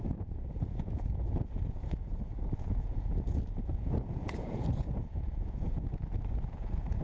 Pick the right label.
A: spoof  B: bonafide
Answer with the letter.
A